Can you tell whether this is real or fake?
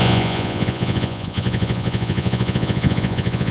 fake